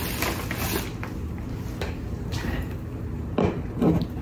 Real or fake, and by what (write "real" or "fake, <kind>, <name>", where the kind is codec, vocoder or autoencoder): real